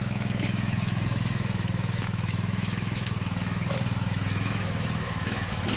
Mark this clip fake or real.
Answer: fake